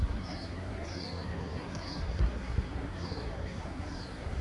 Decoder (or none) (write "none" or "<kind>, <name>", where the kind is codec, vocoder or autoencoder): codec, SNAC